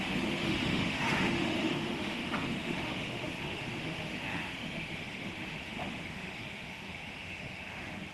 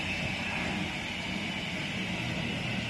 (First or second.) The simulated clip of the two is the first